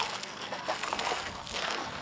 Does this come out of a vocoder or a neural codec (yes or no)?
yes